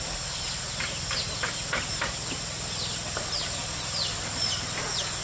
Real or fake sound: real